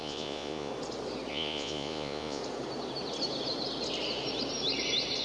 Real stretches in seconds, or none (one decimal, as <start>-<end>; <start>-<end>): 0.7-1.3; 2.4-5.2

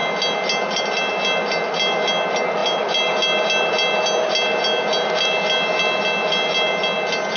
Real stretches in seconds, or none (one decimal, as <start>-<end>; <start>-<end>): 0.0-7.4

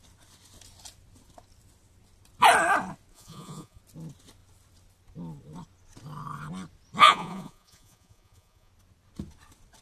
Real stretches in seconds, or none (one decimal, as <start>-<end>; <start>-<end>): 0.0-3.1; 3.8-7.0; 8.7-9.8

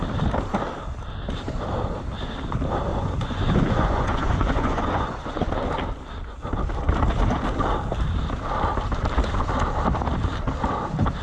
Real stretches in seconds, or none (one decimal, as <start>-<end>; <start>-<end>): 0.0-2.9; 5.5-11.2

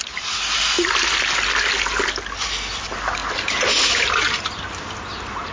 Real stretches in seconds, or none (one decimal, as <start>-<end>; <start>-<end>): 0.0-5.5

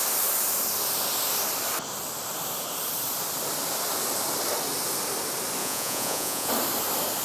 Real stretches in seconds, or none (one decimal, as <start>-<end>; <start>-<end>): 0.0-5.6; 6.5-7.2